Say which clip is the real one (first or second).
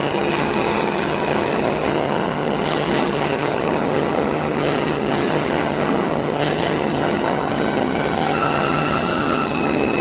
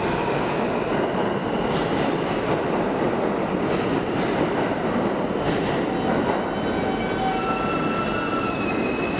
second